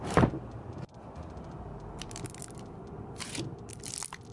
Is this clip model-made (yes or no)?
yes